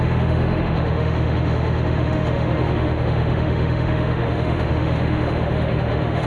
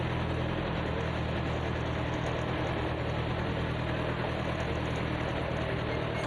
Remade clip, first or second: first